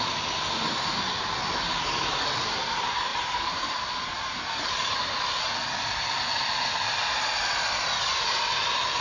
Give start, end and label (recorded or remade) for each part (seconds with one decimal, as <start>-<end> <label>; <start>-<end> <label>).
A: 0.0-3.1 recorded; 3.1-4.4 remade; 4.4-6.7 recorded; 6.7-7.3 remade; 7.3-9.0 recorded

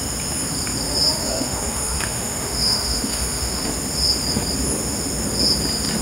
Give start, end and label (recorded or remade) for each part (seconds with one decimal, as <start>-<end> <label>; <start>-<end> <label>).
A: 0.0-1.2 recorded; 1.2-3.7 remade; 3.7-6.0 recorded

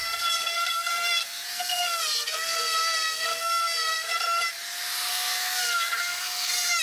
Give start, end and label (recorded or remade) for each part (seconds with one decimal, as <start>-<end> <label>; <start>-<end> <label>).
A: 0.0-4.1 remade; 4.1-5.1 recorded; 5.1-6.8 remade

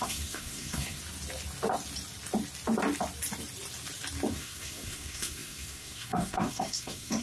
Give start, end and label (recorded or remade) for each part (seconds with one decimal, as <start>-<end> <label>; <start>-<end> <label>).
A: 0.0-1.0 remade; 1.0-4.3 recorded; 4.3-7.2 remade

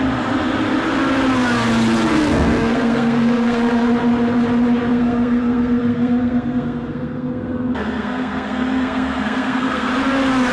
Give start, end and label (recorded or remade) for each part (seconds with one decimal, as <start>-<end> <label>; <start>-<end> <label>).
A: 0.0-2.1 recorded; 2.1-3.9 remade; 3.9-4.9 recorded; 4.9-9.9 remade; 9.9-10.5 recorded

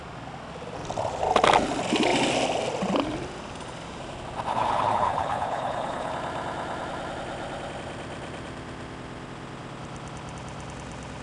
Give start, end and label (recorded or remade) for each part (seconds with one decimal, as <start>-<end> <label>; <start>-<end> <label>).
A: 0.0-4.5 recorded; 4.5-6.1 remade; 6.1-11.2 recorded